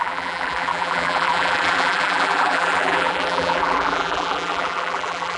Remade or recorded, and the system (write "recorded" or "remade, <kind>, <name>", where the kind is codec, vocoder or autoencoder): remade, vocoder, BigVGAN v2